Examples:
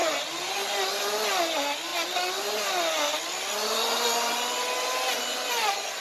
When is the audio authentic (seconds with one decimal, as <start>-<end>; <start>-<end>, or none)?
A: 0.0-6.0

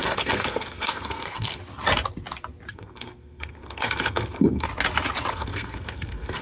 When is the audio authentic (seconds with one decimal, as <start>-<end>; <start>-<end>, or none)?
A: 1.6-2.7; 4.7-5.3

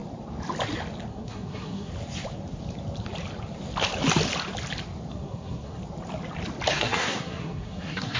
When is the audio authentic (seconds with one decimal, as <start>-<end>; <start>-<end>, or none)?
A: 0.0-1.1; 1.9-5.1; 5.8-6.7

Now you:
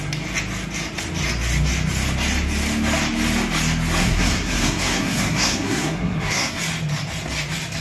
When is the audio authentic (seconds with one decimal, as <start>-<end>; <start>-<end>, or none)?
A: 0.0-4.0; 6.6-7.8

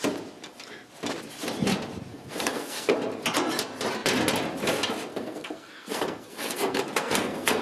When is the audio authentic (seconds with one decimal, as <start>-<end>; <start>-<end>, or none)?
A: 0.0-2.1; 2.9-5.1

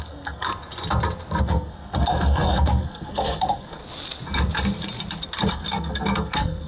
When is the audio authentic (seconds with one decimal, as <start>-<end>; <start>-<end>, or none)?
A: 0.5-1.4; 3.8-5.5

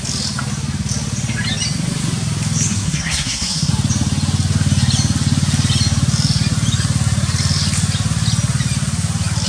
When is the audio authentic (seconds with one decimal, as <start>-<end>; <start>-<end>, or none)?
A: 0.0-2.7; 3.7-9.5